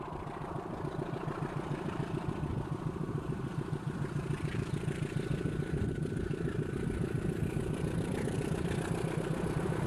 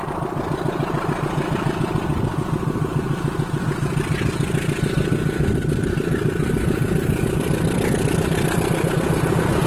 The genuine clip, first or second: second